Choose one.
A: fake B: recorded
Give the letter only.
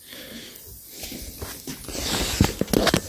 B